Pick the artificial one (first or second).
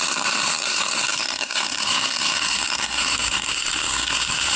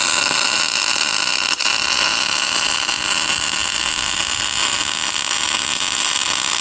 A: first